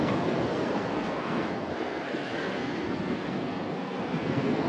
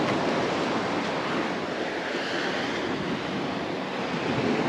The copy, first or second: first